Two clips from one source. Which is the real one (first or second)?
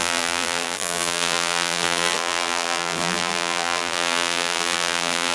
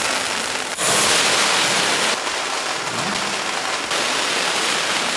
second